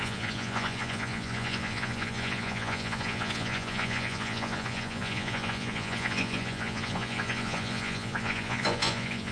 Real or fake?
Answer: fake